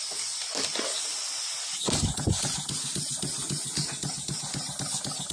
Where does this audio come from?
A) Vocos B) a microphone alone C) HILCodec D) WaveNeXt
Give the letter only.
B